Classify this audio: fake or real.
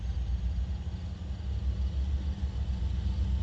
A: real